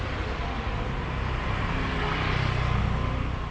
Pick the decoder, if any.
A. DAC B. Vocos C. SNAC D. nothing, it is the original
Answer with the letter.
D